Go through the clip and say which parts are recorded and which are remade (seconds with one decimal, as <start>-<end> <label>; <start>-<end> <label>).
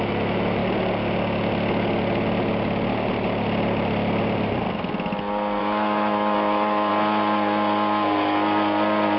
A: 0.0-0.6 remade; 0.6-5.6 recorded; 5.6-6.9 remade; 6.9-9.2 recorded